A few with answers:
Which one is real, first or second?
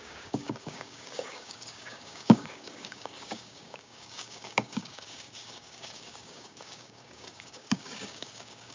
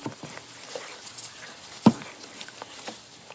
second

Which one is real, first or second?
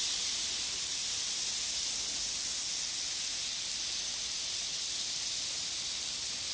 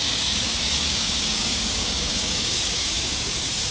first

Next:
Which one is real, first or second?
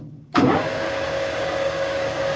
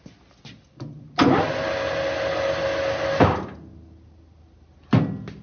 second